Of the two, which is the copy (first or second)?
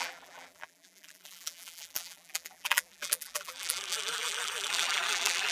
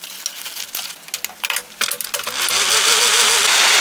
first